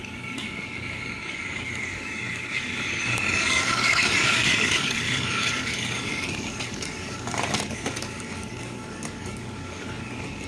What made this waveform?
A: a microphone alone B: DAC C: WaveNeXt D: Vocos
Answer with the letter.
B